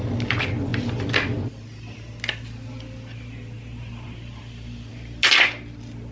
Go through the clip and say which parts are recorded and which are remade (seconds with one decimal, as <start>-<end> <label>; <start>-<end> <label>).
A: 0.0-6.1 recorded